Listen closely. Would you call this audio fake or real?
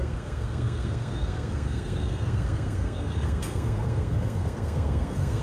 fake